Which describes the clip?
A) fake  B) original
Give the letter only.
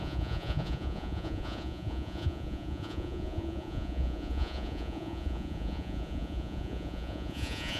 A